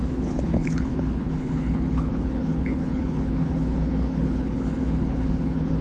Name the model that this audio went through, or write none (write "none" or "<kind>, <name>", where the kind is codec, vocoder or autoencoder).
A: codec, HILCodec